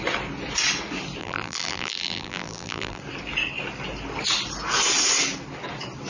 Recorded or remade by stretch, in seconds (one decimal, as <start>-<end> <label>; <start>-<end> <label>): 0.0-1.2 recorded; 1.2-3.0 remade; 3.0-6.1 recorded